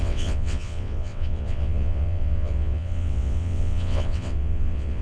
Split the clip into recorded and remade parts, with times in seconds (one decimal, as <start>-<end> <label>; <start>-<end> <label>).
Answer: 0.0-5.0 remade